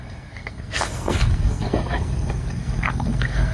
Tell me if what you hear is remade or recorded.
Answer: remade